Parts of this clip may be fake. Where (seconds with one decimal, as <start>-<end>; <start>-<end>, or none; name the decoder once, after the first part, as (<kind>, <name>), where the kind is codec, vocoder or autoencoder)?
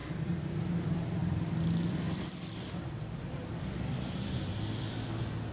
0.0-0.6 (vocoder, BigVGAN v2); 1.2-4.5